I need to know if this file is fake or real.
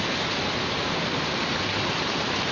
real